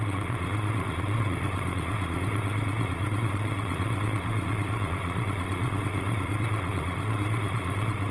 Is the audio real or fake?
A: fake